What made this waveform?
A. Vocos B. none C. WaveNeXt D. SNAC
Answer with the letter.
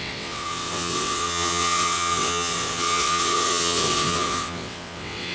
C